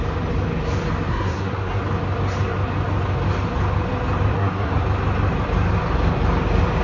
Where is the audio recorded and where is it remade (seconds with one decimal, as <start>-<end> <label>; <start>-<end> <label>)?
0.0-1.1 recorded; 1.1-1.8 remade; 1.8-4.3 recorded; 4.3-4.8 remade; 4.8-6.8 recorded